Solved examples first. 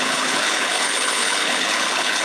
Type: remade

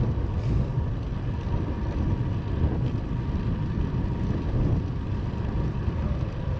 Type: recorded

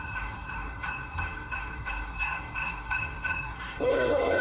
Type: remade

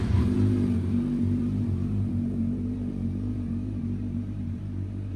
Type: remade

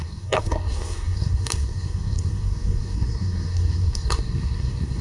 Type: remade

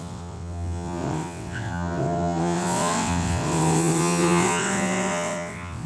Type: remade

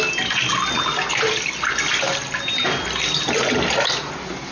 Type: recorded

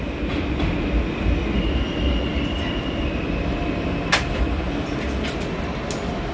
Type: recorded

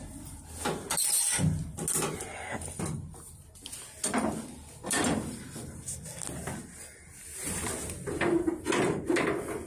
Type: recorded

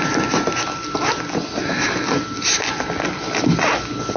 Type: recorded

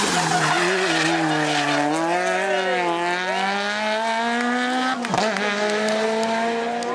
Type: recorded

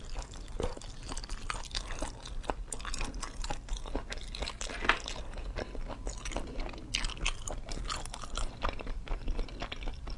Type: recorded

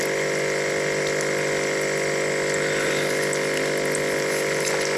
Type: recorded